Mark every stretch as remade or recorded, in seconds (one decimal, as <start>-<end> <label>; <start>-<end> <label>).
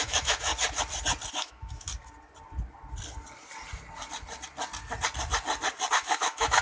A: 0.0-0.5 remade; 0.5-1.3 recorded; 1.3-1.9 remade; 1.9-5.9 recorded; 5.9-6.6 remade